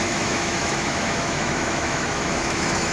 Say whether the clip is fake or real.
fake